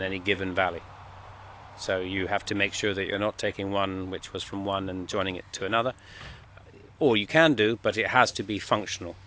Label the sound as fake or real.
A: real